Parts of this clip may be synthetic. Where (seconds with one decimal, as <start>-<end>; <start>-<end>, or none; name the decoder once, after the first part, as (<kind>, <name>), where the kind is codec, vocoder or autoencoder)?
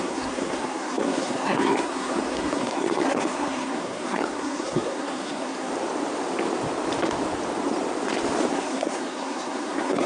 0.0-5.7 (codec, SNAC); 8.5-10.1